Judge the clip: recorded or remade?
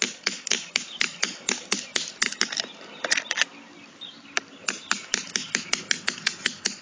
recorded